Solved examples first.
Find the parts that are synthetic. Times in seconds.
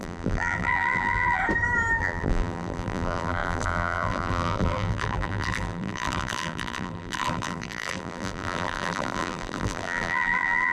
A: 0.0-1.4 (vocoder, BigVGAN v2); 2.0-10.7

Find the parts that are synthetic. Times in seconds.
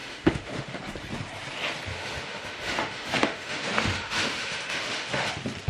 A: 0.0-0.8 (autoencoder, DAC-VAE); 1.9-5.3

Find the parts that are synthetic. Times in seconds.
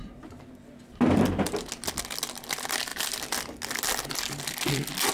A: none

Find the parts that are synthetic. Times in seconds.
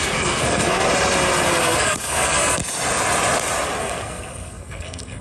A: 0.0-0.9 (codec, SNAC); 1.6-2.6; 3.8-5.2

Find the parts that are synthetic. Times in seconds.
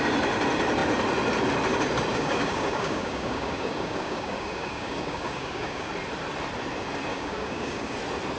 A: 2.1-5.9 (codec, DAC); 7.1-8.0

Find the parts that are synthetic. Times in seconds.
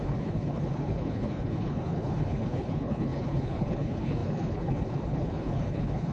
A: 0.0-6.1 (codec, HILCodec)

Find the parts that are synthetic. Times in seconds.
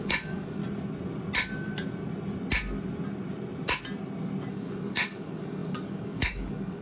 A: 0.0-0.6 (codec, DAC); 4.5-6.8